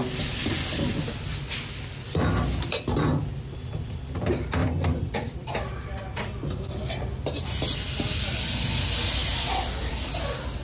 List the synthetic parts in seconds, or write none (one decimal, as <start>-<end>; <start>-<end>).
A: 4.6-6.2; 9.2-10.1